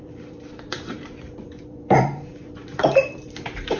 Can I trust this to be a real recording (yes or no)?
no